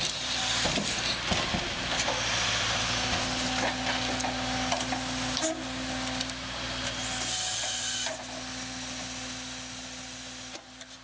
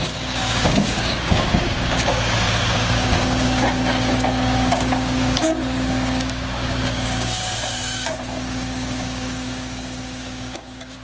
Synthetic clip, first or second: second